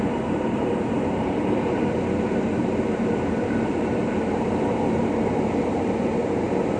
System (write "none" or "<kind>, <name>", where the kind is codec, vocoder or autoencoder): vocoder, BigVGAN v2